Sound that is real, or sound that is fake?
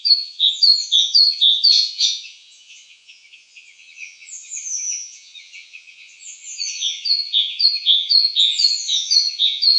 fake